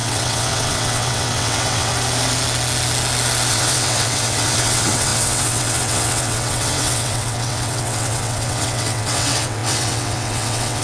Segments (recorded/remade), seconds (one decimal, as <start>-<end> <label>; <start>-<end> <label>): 0.0-1.9 remade; 1.9-3.5 recorded; 3.5-10.8 remade